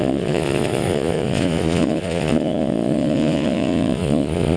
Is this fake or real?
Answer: fake